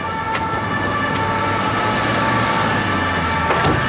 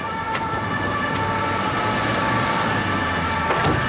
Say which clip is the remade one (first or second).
second